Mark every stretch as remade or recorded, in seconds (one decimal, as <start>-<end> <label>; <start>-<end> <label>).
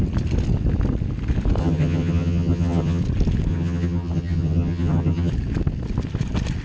0.0-1.6 recorded; 1.6-3.0 remade; 3.0-3.5 recorded; 3.5-5.3 remade; 5.3-6.6 recorded